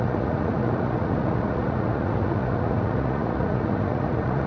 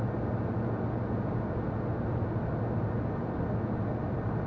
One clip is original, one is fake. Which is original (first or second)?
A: second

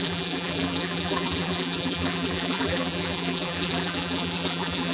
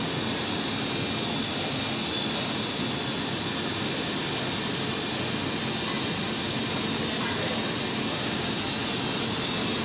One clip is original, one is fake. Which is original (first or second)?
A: second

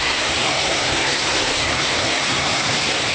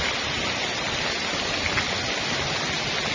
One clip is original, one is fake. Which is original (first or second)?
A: second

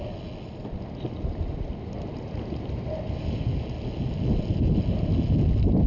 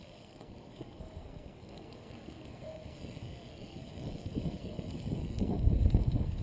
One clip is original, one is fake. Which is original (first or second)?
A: first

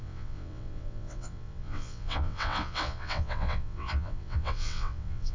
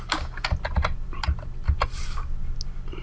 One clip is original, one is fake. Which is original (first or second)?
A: second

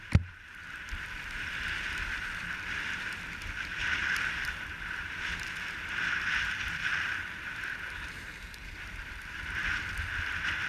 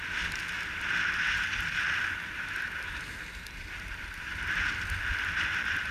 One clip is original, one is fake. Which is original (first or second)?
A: second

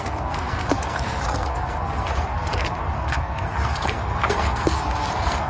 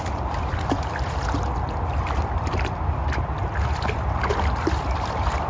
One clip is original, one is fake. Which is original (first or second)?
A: second